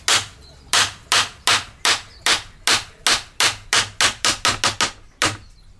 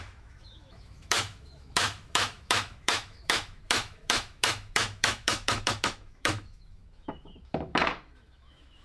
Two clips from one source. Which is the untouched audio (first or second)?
first